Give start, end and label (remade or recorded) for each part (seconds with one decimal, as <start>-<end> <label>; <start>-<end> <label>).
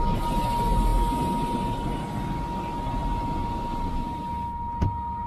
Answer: 0.0-5.3 recorded